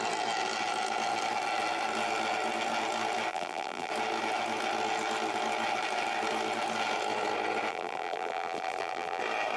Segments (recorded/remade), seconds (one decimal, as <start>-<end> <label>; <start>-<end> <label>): 0.0-3.3 recorded; 3.3-3.9 remade; 3.9-7.7 recorded; 7.7-9.2 remade; 9.2-9.6 recorded